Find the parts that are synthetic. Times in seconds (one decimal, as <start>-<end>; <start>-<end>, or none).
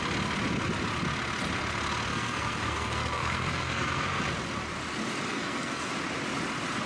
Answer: 2.1-4.2; 5.3-5.9